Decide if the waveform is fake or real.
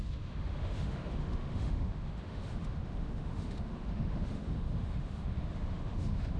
fake